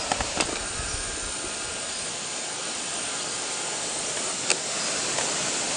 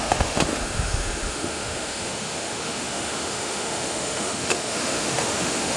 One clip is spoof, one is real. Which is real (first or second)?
first